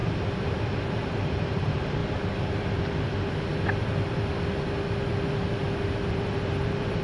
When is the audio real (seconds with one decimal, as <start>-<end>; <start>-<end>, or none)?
0.0-1.1; 2.0-6.1